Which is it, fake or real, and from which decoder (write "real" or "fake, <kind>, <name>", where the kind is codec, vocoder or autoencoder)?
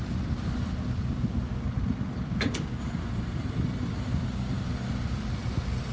real